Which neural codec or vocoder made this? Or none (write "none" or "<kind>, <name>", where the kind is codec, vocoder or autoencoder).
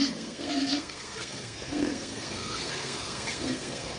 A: codec, SNAC